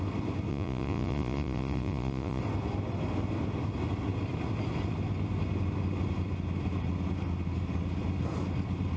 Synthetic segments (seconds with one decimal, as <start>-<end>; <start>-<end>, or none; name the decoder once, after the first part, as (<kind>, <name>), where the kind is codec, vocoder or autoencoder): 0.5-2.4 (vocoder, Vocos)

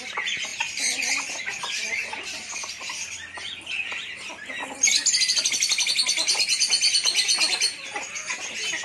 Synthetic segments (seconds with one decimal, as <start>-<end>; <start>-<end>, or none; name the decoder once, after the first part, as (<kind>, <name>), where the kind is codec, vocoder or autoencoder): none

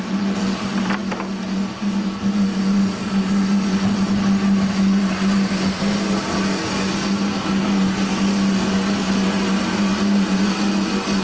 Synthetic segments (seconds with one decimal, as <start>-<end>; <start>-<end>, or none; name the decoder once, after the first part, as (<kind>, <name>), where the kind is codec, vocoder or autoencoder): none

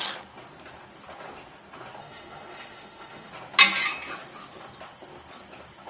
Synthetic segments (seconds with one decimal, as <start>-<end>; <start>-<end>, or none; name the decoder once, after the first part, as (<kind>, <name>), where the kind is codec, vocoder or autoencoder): 2.0-3.3 (autoencoder, DAC-VAE)